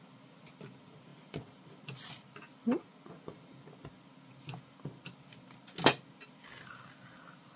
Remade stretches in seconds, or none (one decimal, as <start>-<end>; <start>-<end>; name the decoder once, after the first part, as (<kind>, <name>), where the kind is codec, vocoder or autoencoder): none